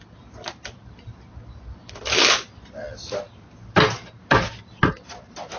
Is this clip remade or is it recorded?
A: recorded